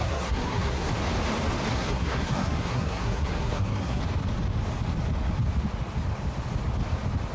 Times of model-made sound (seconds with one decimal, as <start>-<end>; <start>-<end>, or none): 0.0-0.9; 1.7-4.0